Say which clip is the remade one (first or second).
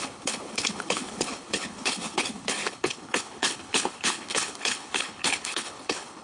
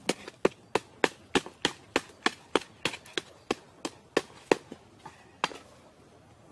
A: first